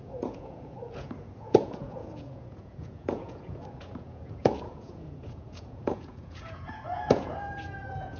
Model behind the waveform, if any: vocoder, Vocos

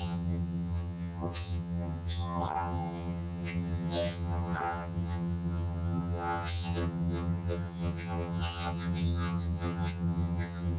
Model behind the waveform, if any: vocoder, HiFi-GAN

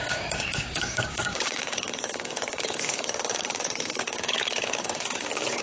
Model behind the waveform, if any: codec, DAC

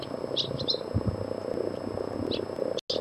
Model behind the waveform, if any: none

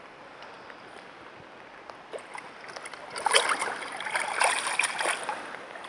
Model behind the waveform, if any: none